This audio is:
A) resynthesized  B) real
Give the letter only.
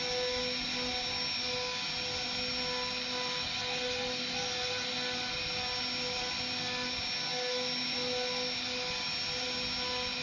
B